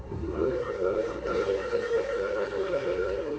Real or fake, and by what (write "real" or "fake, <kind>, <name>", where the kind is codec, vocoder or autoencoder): fake, codec, SNAC